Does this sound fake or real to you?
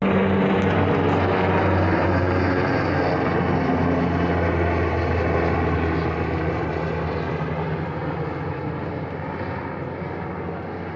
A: real